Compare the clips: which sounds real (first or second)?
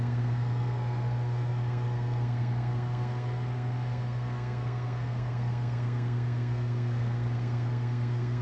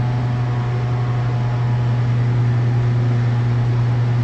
second